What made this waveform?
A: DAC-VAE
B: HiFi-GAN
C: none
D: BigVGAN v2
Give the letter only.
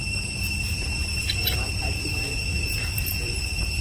D